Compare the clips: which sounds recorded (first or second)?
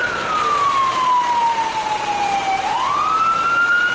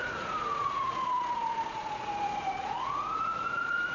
first